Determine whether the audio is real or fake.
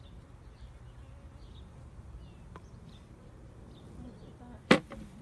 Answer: fake